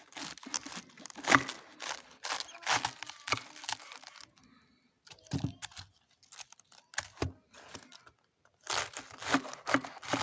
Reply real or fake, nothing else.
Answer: real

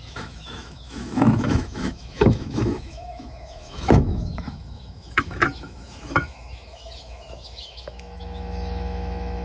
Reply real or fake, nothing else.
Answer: fake